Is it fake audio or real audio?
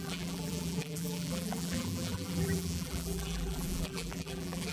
fake